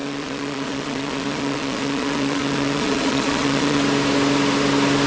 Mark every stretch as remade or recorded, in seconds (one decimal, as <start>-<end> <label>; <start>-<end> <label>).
0.0-3.8 remade; 3.8-5.1 recorded